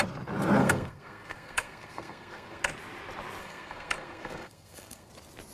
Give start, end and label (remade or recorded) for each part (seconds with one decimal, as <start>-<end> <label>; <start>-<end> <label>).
0.0-0.6 recorded; 0.6-2.6 remade; 2.6-3.4 recorded; 3.4-5.1 remade; 5.1-5.5 recorded